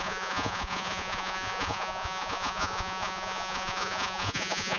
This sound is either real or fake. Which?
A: fake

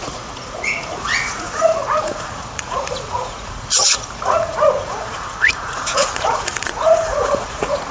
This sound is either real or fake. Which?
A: fake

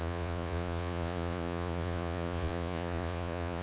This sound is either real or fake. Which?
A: fake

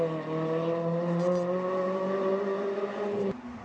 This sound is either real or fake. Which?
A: real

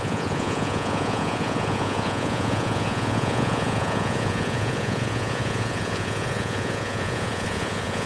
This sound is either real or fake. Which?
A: fake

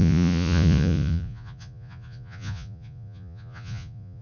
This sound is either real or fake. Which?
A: fake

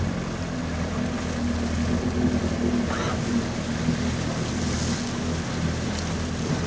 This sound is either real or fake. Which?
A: real